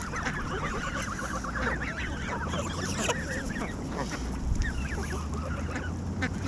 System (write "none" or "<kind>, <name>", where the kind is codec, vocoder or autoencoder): none